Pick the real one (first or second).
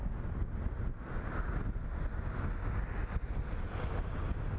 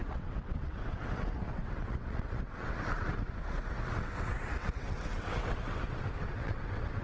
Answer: first